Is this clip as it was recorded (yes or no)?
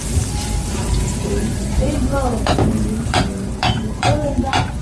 no